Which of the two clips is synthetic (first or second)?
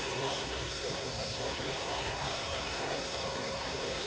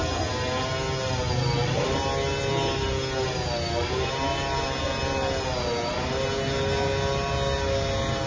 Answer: first